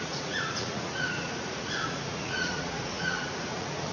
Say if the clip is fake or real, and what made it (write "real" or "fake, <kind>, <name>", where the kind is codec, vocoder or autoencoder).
fake, vocoder, Vocos